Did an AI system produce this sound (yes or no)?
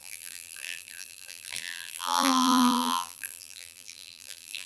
yes